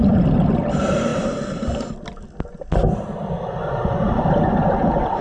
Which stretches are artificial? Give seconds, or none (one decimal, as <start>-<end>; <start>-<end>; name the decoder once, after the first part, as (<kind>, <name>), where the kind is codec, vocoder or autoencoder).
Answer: none